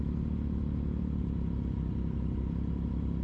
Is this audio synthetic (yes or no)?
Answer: no